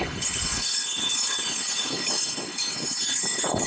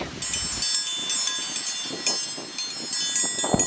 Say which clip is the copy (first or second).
first